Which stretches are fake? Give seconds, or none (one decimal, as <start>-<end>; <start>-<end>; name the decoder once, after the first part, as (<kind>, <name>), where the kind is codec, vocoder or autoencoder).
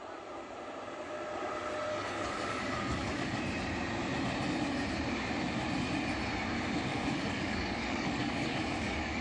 1.9-3.4 (codec, DAC); 6.9-9.2